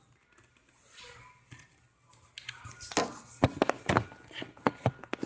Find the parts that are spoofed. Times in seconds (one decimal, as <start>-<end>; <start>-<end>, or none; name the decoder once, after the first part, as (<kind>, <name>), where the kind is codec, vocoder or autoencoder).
none